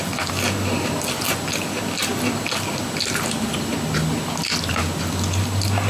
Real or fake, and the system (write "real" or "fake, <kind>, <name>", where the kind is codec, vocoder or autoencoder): real